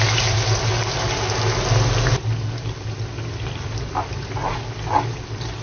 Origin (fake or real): real